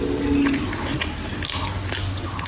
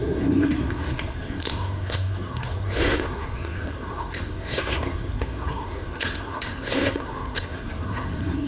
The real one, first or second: first